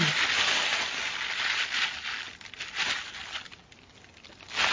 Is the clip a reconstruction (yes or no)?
no